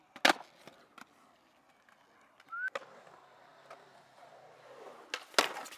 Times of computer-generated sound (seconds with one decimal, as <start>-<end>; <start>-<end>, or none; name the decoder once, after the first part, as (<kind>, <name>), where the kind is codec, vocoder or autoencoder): none

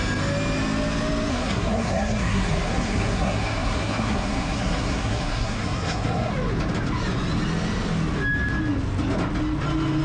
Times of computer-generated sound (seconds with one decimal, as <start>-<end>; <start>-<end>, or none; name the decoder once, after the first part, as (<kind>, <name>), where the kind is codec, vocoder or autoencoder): 1.3-6.3 (codec, SNAC)

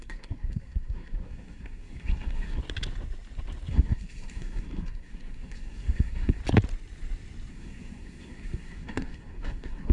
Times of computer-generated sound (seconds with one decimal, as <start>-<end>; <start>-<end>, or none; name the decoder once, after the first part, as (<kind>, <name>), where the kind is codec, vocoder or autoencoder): 0.0-2.6 (codec, SNAC); 3.7-6.4; 7.5-9.9

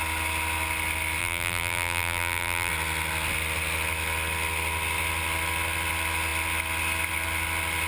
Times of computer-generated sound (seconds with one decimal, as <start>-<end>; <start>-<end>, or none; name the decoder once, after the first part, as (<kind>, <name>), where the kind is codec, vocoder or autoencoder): 1.2-2.7 (vocoder, BigVGAN v2)

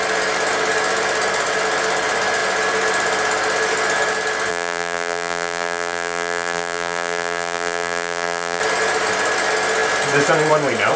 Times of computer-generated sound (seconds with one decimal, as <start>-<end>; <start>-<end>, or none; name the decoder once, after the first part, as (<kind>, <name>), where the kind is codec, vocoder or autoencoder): 4.5-8.6 (vocoder, BigVGAN v2)

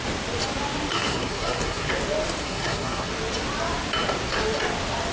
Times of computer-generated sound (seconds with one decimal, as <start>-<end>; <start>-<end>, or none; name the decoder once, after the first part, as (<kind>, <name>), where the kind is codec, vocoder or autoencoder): 0.9-1.9 (codec, SNAC); 2.4-3.1

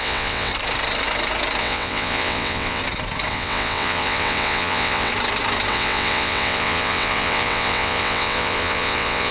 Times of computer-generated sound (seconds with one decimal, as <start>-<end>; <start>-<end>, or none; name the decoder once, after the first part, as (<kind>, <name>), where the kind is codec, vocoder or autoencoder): 0.0-0.5 (vocoder, WaveNeXt); 1.6-2.8; 3.3-5.1; 5.7-9.3